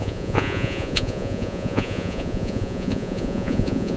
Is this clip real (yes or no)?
no